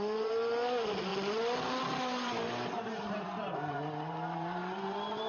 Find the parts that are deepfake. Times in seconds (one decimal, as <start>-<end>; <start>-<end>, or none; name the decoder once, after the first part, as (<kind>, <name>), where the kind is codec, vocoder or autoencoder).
0.0-1.1 (vocoder, BigVGAN v2); 1.8-5.3